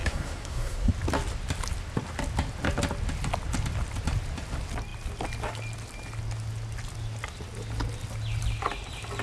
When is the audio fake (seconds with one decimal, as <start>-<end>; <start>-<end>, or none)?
0.0-0.9